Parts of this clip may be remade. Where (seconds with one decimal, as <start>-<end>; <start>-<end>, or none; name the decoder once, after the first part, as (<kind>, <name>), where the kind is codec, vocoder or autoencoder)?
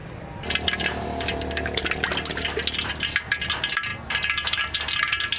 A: none